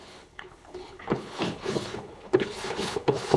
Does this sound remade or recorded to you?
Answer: remade